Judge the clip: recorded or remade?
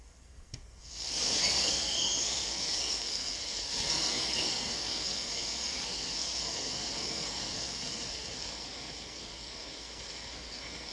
remade